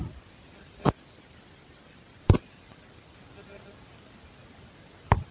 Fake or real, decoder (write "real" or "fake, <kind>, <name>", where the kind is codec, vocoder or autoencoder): real